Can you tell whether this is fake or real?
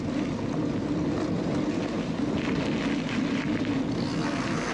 real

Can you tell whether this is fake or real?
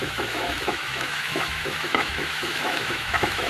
fake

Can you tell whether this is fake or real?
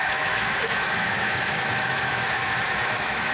fake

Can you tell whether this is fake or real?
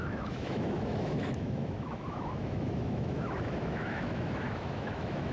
fake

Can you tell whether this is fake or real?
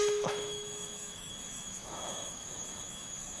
fake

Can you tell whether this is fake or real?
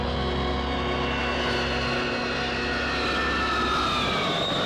real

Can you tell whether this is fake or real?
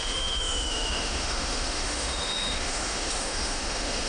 fake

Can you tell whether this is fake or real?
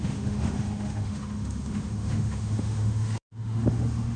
fake